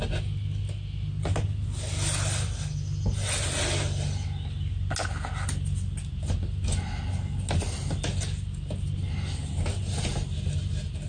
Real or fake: real